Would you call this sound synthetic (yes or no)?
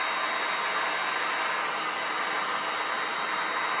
no